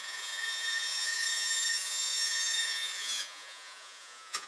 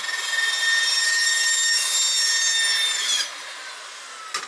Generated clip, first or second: first